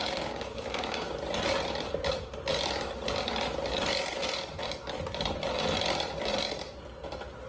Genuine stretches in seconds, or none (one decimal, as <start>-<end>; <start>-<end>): 1.1-7.5